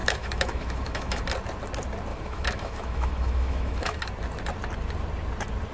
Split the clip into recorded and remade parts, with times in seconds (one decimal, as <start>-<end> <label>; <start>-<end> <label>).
0.0-1.2 remade; 1.2-2.1 recorded; 2.1-4.0 remade; 4.0-5.7 recorded